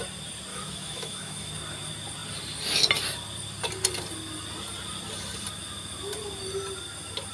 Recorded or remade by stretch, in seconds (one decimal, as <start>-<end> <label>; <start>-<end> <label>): 0.0-0.5 recorded; 0.5-1.5 remade; 1.5-7.3 recorded